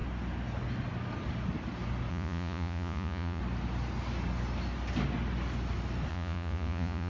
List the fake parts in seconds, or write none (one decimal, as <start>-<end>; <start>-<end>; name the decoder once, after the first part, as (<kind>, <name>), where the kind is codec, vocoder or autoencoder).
2.1-3.4 (vocoder, Vocos); 6.1-7.1